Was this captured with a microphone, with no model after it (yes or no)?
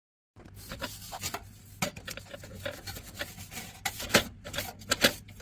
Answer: yes